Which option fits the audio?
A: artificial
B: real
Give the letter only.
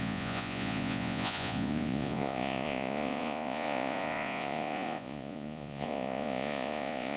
A